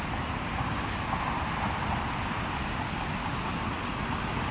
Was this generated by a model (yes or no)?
no